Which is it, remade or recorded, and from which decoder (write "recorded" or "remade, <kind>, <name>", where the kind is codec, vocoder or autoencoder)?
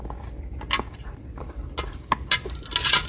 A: recorded